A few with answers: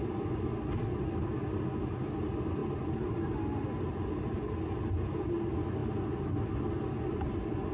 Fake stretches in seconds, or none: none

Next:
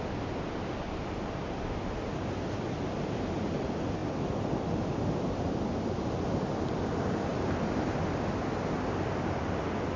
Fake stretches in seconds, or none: none

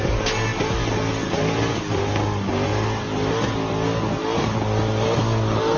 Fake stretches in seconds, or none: none

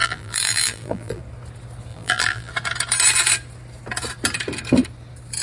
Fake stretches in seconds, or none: 0.0-1.2; 1.9-2.5

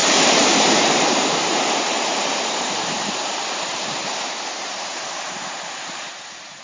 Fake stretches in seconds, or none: 0.0-6.6

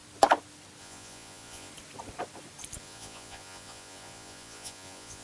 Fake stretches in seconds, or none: 0.8-1.7; 2.8-5.2

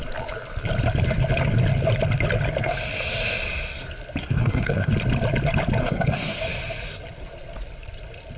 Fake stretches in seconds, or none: 4.2-4.9; 5.8-6.4

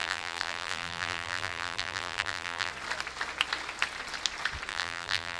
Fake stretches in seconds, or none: 0.0-2.7; 4.7-5.4